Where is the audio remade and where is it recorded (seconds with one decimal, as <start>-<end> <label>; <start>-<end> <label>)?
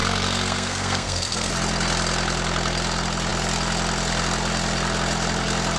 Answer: 0.0-1.5 remade; 1.5-5.8 recorded